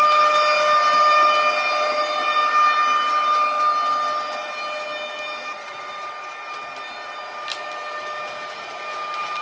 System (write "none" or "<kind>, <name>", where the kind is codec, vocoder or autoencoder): none